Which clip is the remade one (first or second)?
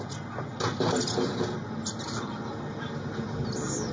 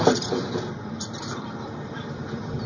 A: second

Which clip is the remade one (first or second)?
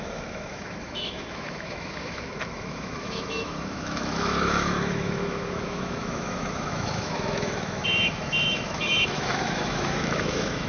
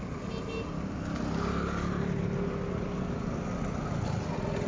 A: first